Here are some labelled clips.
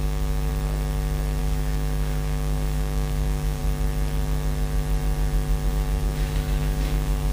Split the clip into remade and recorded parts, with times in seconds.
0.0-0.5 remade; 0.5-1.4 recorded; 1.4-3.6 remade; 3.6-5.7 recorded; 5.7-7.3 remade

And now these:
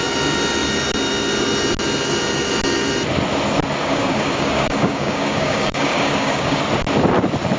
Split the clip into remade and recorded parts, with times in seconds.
0.0-3.8 recorded; 3.8-6.6 remade; 6.6-7.6 recorded

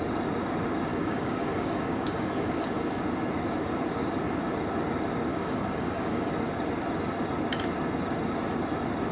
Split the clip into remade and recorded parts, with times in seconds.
0.0-0.9 recorded; 0.9-3.0 remade; 3.0-5.3 recorded; 5.3-6.3 remade; 6.3-9.1 recorded

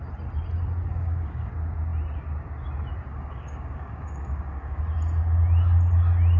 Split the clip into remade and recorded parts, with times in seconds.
0.0-0.9 recorded; 0.9-1.5 remade; 1.5-3.1 recorded; 3.1-4.8 remade; 4.8-6.4 recorded

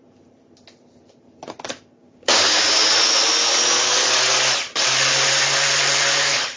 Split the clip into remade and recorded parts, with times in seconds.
0.0-2.0 recorded; 2.0-2.9 remade; 2.9-6.6 recorded